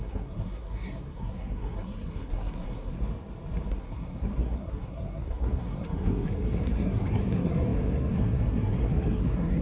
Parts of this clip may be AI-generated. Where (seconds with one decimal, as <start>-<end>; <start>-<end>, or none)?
0.0-3.0; 3.7-9.6